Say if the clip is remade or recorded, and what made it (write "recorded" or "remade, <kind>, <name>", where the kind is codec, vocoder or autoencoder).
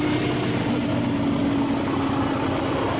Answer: recorded